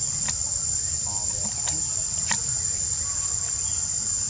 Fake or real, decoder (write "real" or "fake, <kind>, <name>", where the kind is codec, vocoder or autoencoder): real